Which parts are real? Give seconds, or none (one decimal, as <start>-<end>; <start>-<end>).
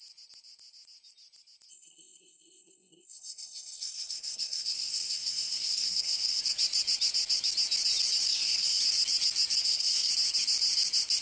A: 0.0-1.7; 6.4-8.3; 8.8-9.6; 10.1-11.2